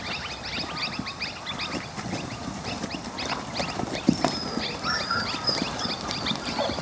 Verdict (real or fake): real